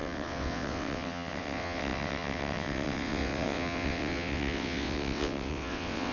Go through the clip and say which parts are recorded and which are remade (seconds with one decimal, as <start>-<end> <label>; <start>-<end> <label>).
0.0-6.1 remade